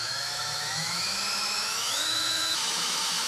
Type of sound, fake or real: fake